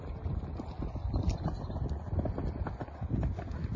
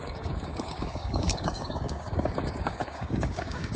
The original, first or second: first